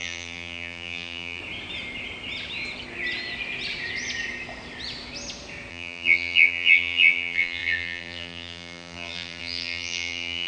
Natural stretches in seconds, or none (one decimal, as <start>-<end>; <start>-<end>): 1.4-5.7